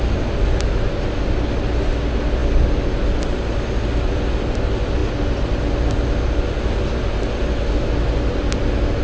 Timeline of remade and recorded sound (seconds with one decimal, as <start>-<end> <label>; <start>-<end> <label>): 0.0-9.0 recorded